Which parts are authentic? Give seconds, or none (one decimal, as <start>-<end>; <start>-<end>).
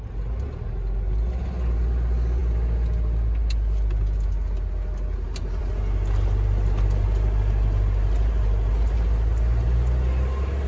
0.0-10.7